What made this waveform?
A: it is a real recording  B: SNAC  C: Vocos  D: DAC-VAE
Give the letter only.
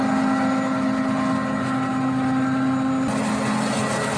A